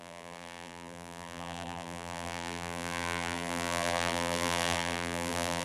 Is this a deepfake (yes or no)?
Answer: yes